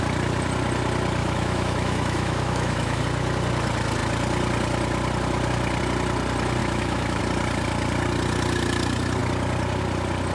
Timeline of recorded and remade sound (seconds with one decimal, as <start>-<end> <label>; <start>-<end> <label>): 0.0-1.2 recorded; 1.2-3.0 remade; 3.0-6.6 recorded; 6.6-7.2 remade; 7.2-10.3 recorded